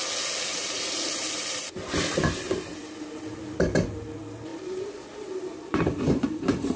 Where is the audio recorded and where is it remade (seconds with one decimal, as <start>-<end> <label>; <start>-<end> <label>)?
0.0-0.5 recorded; 0.5-1.8 remade; 1.8-4.5 recorded; 4.5-6.8 remade